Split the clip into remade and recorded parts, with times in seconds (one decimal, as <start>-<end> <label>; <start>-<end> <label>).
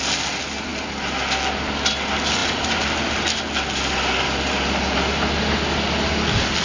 0.0-6.6 recorded